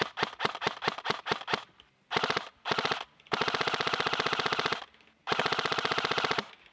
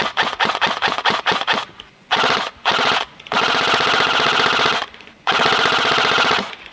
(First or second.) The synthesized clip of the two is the second